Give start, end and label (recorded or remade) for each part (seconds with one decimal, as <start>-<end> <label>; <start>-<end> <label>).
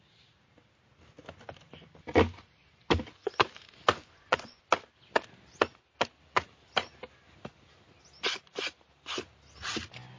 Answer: 0.0-4.0 recorded; 4.0-4.6 remade; 4.6-10.2 recorded